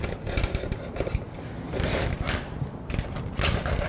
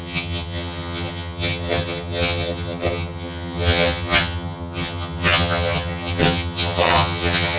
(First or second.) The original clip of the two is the first